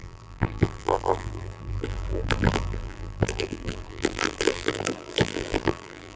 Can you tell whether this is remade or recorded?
remade